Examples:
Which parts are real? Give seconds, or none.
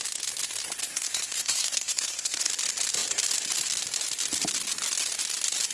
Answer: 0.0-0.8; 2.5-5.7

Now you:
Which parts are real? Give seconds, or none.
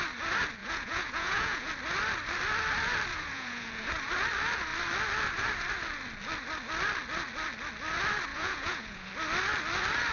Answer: 0.0-0.6; 1.7-3.1; 3.9-8.3; 9.1-10.1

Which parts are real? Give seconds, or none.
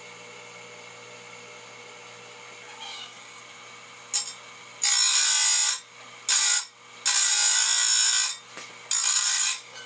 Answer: 0.0-2.9; 3.4-9.1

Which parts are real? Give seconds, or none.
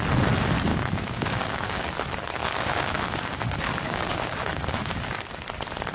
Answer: 0.0-0.7; 1.9-2.4; 5.0-5.9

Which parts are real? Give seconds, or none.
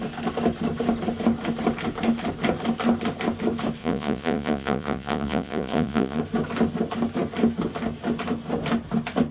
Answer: 0.0-3.8; 6.2-9.3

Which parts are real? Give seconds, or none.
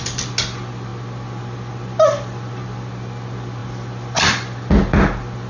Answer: 0.0-5.5